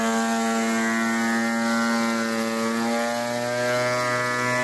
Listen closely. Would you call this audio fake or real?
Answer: real